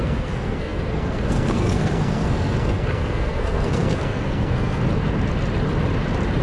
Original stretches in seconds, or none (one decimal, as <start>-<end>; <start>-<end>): 4.8-6.4